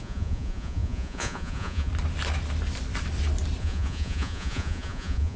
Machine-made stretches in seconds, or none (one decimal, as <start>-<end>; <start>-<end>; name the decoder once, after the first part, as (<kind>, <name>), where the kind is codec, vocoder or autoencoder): 0.0-1.9 (vocoder, Vocos); 3.6-5.4